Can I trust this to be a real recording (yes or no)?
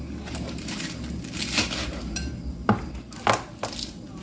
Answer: yes